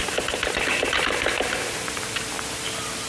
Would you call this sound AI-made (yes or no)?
no